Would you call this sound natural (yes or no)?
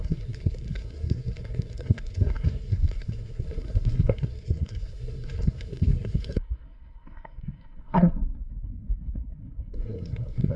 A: no